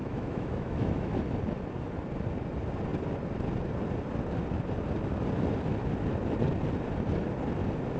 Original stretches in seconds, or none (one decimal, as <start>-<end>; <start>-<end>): 1.1-8.0